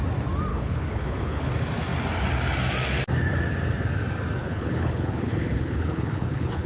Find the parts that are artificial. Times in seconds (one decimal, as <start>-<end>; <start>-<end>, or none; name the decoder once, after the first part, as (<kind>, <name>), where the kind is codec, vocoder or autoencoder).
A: 0.5-1.5 (codec, HILCodec); 4.4-6.7